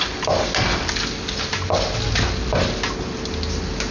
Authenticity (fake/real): real